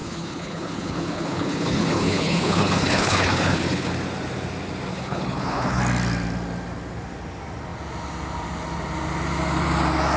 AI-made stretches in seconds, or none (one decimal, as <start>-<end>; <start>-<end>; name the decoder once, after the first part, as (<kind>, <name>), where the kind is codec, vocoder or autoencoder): 0.0-3.9 (codec, HILCodec); 4.9-5.8